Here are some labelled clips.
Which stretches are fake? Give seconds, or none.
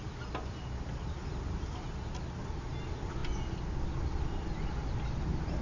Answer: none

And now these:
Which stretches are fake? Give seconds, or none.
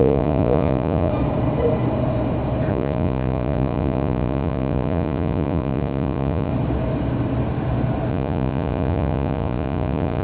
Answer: 0.0-1.1; 2.7-6.5; 8.1-10.2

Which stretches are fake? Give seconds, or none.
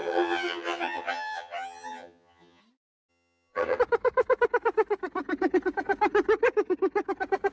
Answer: 0.0-2.6; 3.1-3.8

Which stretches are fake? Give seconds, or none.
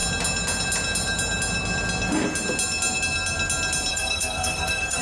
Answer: 3.9-5.0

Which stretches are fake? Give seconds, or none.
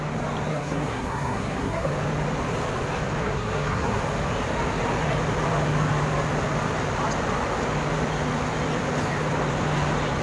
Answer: 0.5-1.9; 3.2-4.0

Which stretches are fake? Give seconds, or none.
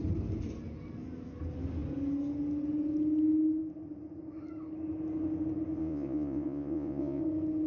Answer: 5.8-7.2